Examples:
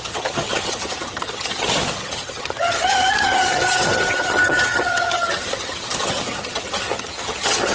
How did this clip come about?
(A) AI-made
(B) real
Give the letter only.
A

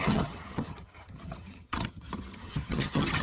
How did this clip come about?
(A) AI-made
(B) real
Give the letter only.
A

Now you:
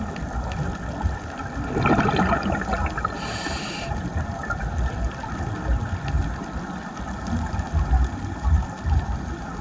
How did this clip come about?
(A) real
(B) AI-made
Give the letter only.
A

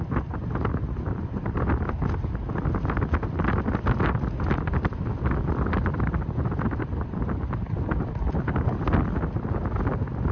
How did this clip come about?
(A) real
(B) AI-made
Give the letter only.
A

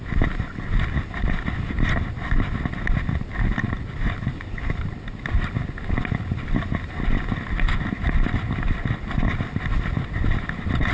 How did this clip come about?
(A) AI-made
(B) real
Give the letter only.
B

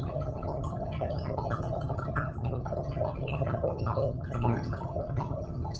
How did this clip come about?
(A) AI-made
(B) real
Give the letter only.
A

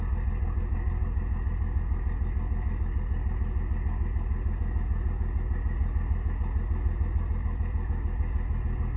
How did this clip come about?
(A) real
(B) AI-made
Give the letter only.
A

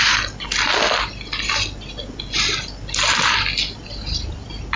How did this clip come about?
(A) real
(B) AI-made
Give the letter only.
A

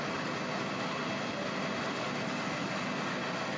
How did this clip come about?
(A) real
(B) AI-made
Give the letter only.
A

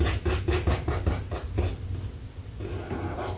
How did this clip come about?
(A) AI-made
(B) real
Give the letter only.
B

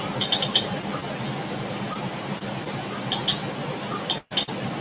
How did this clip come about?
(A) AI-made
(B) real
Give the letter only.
B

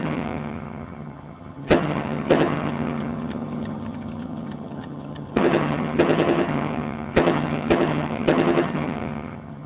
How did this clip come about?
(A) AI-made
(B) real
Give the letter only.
A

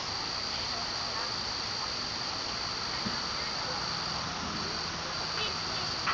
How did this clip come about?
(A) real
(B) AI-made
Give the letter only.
A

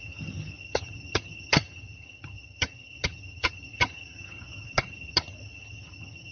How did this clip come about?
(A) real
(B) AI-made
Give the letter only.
B